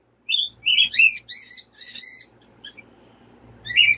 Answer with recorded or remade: recorded